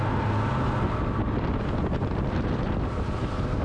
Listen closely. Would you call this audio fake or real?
real